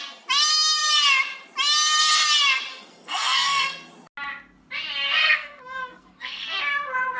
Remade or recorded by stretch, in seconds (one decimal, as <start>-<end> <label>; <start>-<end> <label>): 0.0-2.7 recorded; 2.7-3.9 remade; 3.9-5.2 recorded; 5.2-6.6 remade; 6.6-7.2 recorded